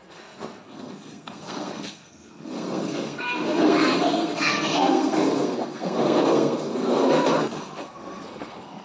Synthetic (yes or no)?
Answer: yes